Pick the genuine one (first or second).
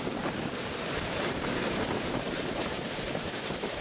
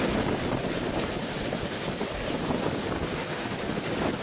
second